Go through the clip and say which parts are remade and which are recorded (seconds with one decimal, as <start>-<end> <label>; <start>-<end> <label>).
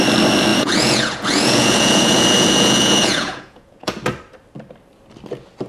0.0-0.5 recorded; 0.5-3.9 remade; 3.9-5.7 recorded